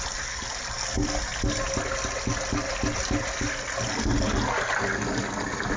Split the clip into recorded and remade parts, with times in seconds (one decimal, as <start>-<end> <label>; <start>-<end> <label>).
0.0-5.8 recorded